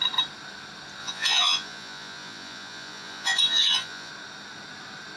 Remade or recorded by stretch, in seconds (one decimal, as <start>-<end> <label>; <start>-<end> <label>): 0.0-1.0 recorded; 1.0-4.1 remade; 4.1-5.2 recorded